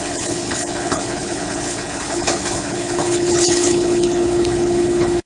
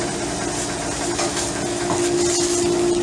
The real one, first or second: second